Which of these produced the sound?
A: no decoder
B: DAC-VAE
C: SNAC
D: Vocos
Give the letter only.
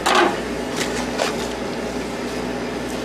A